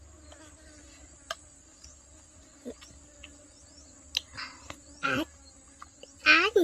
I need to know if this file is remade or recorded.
recorded